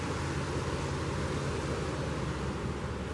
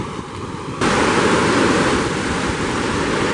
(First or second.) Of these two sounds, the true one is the first